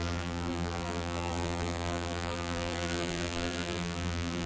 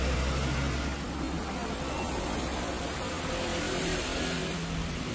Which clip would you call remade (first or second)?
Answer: first